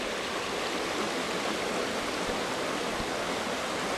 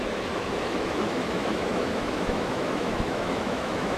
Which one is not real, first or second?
second